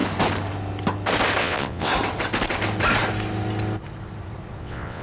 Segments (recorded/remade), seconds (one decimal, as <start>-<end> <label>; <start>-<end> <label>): 0.0-1.4 recorded; 1.4-1.9 remade; 1.9-4.6 recorded; 4.6-5.0 remade